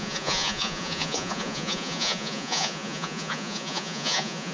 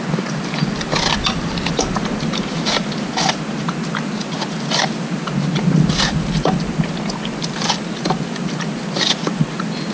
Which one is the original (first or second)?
second